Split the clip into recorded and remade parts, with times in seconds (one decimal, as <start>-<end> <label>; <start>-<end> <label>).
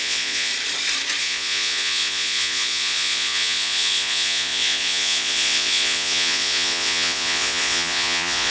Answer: 0.0-0.5 remade; 0.5-1.2 recorded; 1.2-8.5 remade